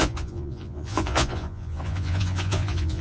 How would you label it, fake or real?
fake